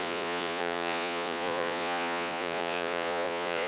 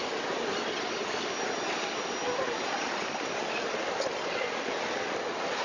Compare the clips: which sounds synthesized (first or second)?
first